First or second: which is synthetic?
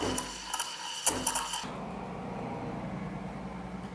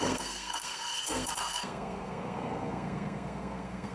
second